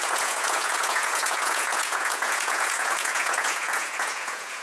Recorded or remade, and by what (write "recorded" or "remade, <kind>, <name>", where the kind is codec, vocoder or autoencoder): remade, vocoder, Vocos